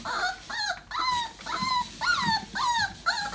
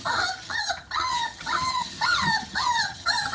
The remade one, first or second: second